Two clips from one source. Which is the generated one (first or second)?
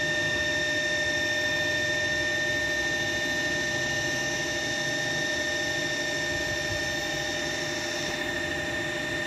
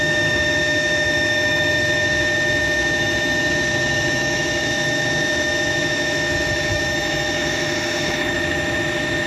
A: second